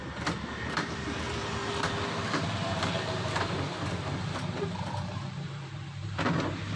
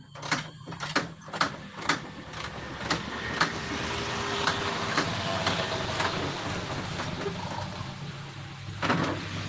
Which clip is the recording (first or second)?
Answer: second